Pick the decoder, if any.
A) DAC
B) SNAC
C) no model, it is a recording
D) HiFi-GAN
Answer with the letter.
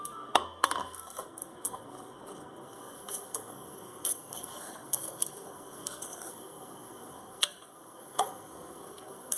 B